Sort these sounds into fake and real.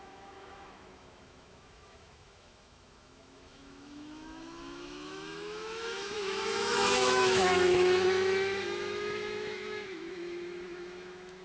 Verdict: fake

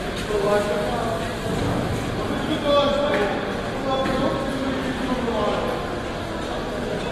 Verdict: real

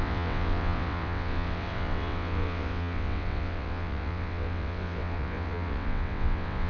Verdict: fake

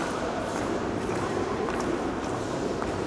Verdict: fake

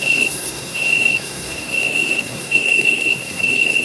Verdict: fake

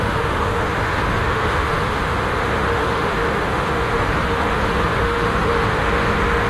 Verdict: fake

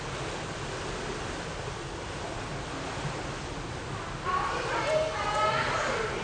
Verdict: real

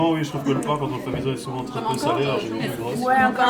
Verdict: real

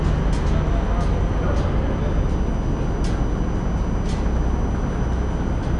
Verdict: real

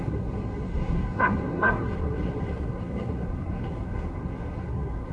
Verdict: fake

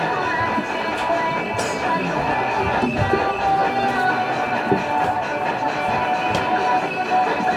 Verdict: real